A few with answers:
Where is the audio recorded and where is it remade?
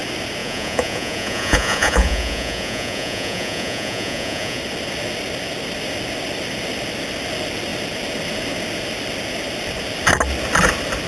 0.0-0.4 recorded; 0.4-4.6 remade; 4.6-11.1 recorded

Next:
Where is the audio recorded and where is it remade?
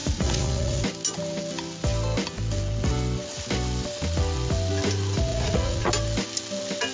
0.0-0.8 remade; 0.8-5.3 recorded; 5.3-5.9 remade; 5.9-6.9 recorded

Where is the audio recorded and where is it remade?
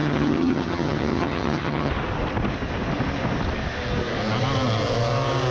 0.0-1.9 remade; 1.9-5.5 recorded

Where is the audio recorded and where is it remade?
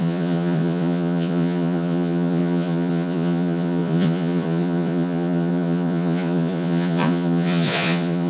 0.0-8.3 remade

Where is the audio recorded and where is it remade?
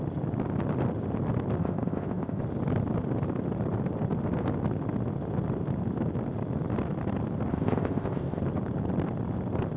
0.0-1.6 recorded; 1.6-2.4 remade; 2.4-7.5 recorded; 7.5-8.4 remade; 8.4-9.8 recorded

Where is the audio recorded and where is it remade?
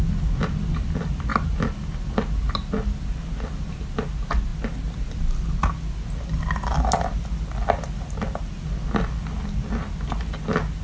0.0-10.8 recorded